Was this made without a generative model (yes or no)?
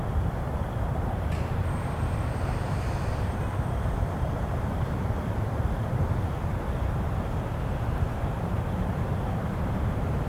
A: no